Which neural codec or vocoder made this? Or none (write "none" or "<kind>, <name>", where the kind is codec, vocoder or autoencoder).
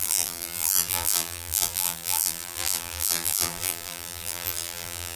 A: vocoder, BigVGAN v2